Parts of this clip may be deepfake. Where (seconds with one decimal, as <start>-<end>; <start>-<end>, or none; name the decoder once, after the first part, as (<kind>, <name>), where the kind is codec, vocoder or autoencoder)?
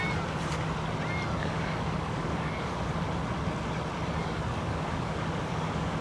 1.4-2.9 (codec, DAC); 4.2-6.0